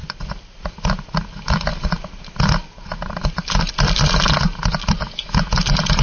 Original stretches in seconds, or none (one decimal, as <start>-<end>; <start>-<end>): 0.7-6.0